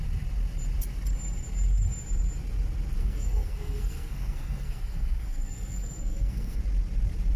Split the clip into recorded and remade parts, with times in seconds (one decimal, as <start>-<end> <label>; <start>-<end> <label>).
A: 0.0-3.0 recorded; 3.0-6.6 remade; 6.6-7.4 recorded